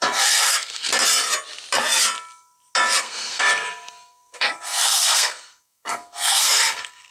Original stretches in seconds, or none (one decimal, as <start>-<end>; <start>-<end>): 0.9-3.0